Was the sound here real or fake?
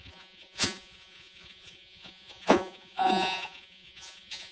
fake